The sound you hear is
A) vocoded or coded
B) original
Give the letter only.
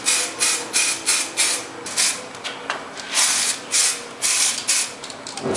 B